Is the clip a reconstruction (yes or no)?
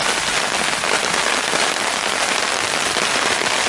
no